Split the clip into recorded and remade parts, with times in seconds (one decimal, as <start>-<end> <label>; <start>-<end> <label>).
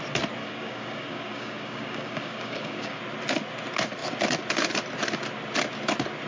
0.0-0.4 recorded; 0.4-3.0 remade; 3.0-6.3 recorded